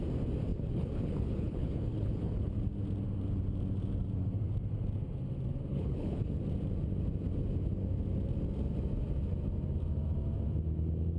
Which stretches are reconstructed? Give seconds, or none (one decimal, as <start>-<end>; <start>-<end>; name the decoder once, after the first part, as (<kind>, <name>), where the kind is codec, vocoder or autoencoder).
0.5-2.6 (codec, HILCodec); 5.7-6.4

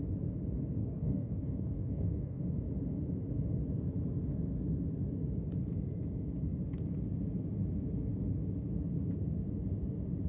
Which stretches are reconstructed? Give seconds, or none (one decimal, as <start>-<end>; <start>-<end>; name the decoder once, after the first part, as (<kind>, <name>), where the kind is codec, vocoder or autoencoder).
0.8-2.4 (codec, DAC)

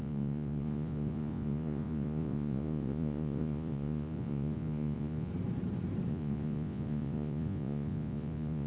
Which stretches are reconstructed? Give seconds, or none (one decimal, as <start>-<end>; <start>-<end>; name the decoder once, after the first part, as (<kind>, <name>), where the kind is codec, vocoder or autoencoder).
0.0-5.3 (vocoder, Vocos); 6.1-8.7